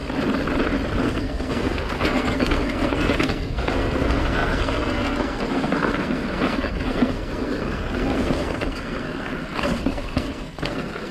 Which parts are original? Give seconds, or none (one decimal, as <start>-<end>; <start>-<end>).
0.0-1.0